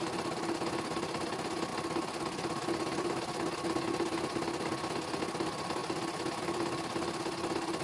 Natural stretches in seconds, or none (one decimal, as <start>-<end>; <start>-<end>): 0.0-7.8